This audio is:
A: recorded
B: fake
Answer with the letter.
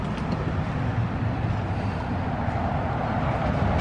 A